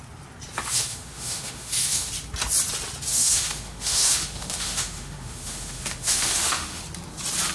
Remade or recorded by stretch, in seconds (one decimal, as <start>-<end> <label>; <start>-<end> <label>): 0.0-0.7 recorded; 0.7-2.1 remade; 2.1-3.1 recorded; 3.1-6.8 remade; 6.8-7.5 recorded

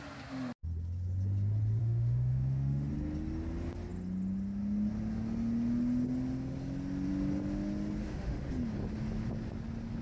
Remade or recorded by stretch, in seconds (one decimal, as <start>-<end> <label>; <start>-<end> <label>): 0.0-1.8 recorded; 1.8-2.9 remade; 2.9-8.0 recorded; 8.0-8.5 remade; 8.5-10.0 recorded